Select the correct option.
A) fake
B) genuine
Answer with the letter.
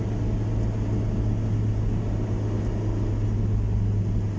B